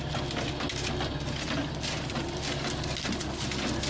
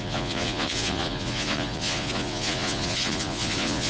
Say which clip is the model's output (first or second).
second